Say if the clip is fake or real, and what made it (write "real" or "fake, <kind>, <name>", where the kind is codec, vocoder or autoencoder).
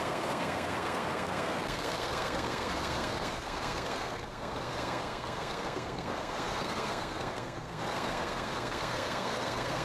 fake, codec, SNAC